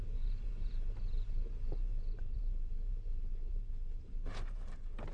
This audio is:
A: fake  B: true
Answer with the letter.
A